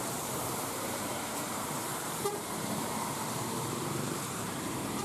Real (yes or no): no